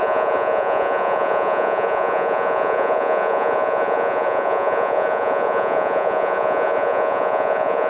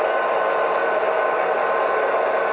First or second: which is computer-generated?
first